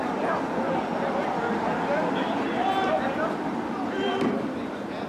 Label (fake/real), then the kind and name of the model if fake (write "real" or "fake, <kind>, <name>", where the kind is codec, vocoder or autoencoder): fake, vocoder, BigVGAN v2